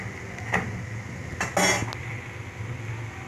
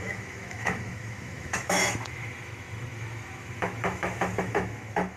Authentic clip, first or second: first